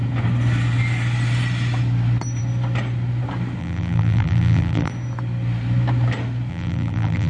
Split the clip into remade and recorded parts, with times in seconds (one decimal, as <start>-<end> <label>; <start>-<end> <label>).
0.0-3.6 recorded; 3.6-4.9 remade; 4.9-6.5 recorded; 6.5-7.3 remade